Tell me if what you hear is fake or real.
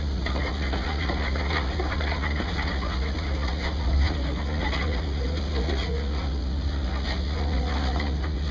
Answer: fake